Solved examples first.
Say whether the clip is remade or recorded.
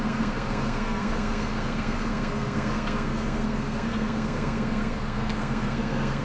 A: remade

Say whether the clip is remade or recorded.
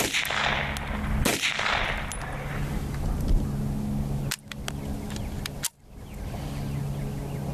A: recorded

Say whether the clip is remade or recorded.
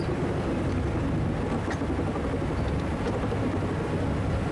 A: recorded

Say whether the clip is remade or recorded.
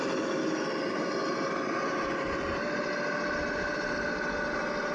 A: recorded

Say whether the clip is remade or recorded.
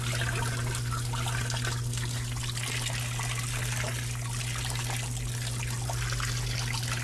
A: recorded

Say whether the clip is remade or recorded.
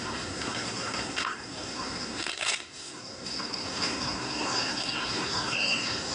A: remade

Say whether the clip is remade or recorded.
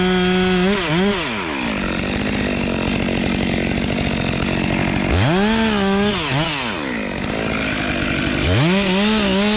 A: recorded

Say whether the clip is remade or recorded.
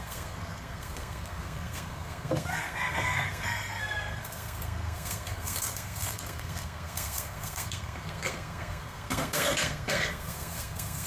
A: remade